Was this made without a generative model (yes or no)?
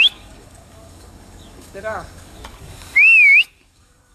no